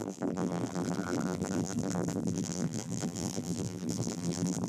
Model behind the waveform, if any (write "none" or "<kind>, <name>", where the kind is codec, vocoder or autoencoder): vocoder, BigVGAN v2